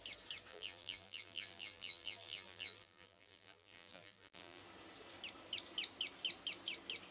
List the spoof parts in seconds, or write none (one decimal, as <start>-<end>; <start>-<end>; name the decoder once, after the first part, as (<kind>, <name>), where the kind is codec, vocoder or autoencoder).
0.5-4.6 (vocoder, BigVGAN v2)